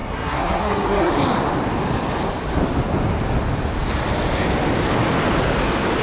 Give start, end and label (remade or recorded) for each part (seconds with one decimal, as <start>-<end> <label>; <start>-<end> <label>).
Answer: 0.0-1.1 remade; 1.1-6.0 recorded